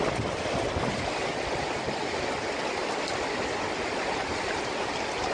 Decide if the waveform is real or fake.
real